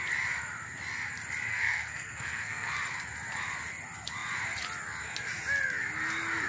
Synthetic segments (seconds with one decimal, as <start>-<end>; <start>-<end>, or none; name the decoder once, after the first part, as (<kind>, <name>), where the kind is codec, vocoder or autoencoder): 1.5-2.8 (codec, SNAC)